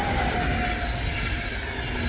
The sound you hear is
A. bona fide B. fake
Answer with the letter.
A